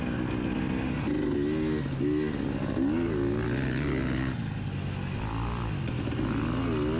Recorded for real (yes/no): yes